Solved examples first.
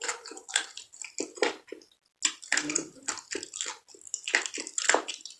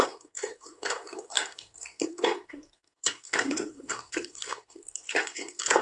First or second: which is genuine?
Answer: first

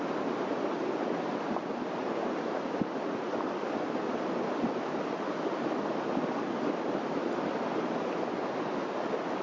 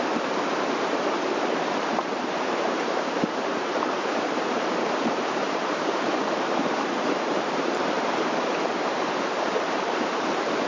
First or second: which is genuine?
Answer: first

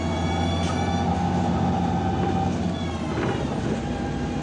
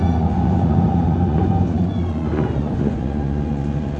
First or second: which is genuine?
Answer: first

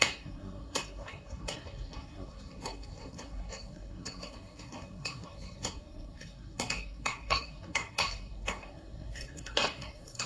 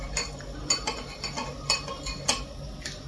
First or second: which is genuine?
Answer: second